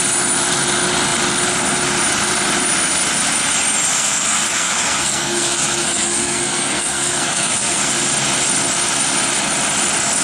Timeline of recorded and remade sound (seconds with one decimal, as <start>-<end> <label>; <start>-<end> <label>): 0.0-3.9 recorded; 3.9-7.9 remade; 7.9-10.2 recorded